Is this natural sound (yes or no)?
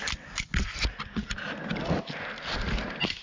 yes